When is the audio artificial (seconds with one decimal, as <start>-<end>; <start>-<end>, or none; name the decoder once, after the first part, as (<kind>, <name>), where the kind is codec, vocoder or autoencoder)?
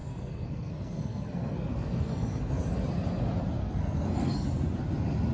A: 0.0-2.6 (codec, SNAC); 3.6-4.4